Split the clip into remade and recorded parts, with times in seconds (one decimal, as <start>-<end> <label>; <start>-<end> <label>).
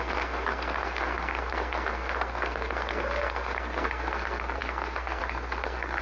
0.0-6.0 remade